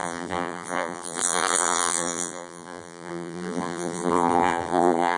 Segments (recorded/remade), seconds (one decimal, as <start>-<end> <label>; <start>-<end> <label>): 0.0-5.2 remade